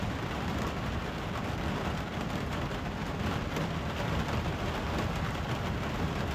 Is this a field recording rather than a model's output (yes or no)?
yes